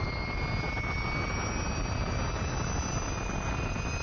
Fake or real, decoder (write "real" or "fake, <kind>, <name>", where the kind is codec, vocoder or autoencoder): real